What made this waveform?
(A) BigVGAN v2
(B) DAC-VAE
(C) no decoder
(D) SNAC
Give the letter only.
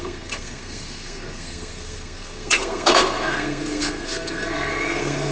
D